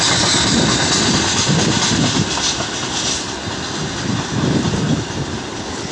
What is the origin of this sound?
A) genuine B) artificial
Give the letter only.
B